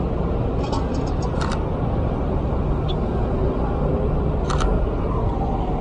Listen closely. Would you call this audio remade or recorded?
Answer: recorded